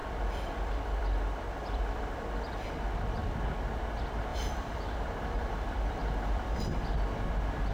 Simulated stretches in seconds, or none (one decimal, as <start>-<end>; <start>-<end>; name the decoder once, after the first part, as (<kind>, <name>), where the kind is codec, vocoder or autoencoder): 0.0-2.7 (vocoder, BigVGAN v2); 4.3-6.6